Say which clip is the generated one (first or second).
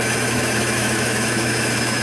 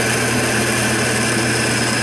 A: first